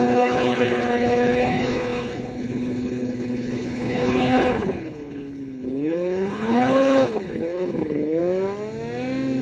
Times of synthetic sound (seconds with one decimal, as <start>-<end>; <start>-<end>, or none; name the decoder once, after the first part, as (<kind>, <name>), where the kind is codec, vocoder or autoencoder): 0.0-8.2 (codec, HILCodec)